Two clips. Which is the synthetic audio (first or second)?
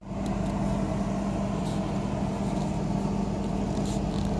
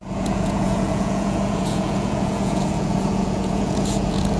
second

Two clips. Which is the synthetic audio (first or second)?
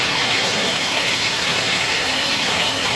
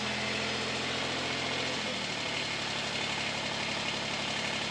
first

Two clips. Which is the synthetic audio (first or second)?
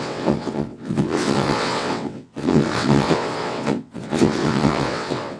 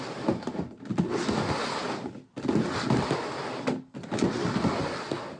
first